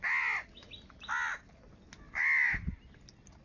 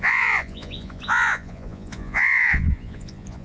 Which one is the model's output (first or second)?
second